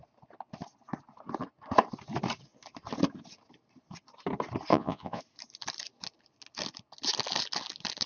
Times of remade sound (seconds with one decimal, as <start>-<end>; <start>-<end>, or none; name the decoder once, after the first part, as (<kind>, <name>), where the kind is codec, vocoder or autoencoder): 4.7-5.2 (vocoder, Vocos)